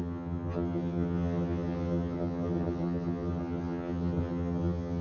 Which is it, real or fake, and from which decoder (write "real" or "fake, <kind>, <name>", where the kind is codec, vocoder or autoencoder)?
fake, vocoder, HiFi-GAN